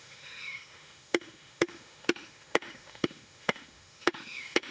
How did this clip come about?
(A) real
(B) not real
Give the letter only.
B